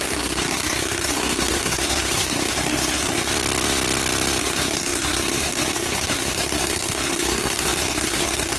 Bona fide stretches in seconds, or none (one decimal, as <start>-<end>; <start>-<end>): 3.3-4.4